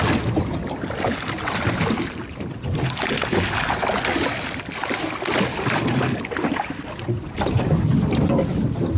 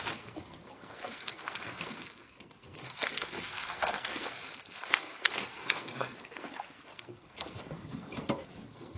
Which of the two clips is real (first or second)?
first